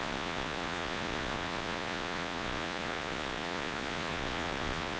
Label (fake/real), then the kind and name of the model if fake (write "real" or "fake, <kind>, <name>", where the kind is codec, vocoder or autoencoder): fake, vocoder, Vocos